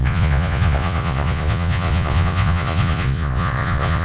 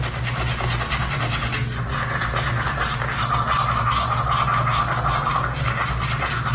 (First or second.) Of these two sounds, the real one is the second